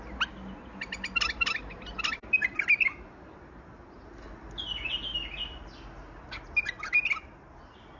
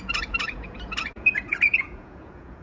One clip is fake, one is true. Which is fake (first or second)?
second